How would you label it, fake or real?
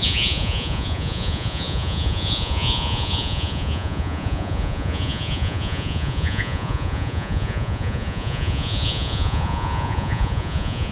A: fake